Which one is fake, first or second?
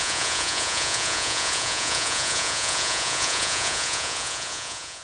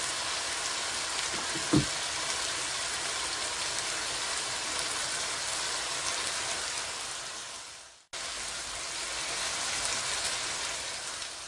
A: first